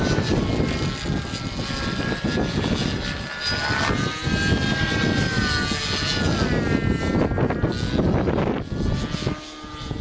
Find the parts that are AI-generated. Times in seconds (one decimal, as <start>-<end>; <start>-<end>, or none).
none